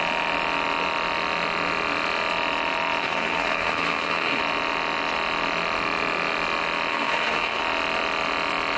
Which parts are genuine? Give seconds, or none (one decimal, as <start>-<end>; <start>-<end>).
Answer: 0.0-3.0; 4.4-6.9; 7.6-8.8